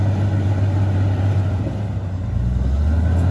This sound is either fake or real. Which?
real